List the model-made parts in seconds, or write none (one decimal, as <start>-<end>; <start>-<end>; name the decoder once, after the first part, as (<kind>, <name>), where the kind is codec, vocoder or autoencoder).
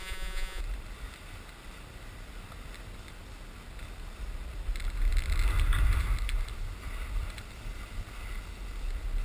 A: 0.0-0.6 (vocoder, Vocos)